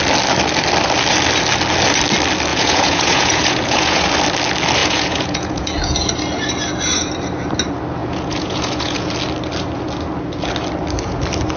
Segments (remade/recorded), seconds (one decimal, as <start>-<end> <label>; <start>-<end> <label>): 0.0-2.5 recorded; 2.5-4.1 remade; 4.1-4.8 recorded; 4.8-6.1 remade; 6.1-8.0 recorded; 8.0-9.1 remade; 9.1-11.6 recorded